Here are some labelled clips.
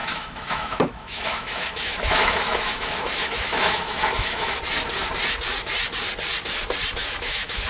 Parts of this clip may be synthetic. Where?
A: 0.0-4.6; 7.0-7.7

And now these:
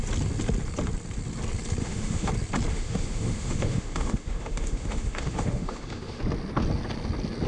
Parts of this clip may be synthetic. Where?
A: 1.8-2.3; 2.7-6.2

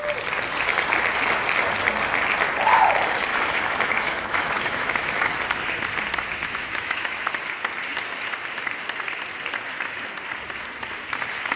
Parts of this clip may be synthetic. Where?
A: 3.3-5.3; 6.4-7.2